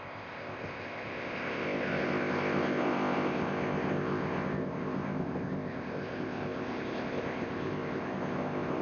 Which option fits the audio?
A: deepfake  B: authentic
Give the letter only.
A